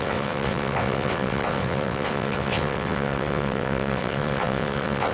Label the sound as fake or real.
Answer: fake